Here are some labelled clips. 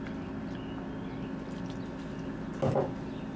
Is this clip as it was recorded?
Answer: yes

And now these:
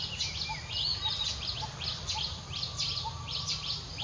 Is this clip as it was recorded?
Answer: yes